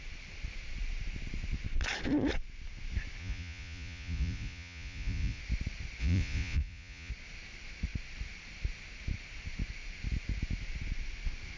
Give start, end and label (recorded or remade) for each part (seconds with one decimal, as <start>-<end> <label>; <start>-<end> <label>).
0.0-3.2 recorded; 3.2-5.4 remade; 5.4-6.0 recorded; 6.0-7.1 remade; 7.1-11.6 recorded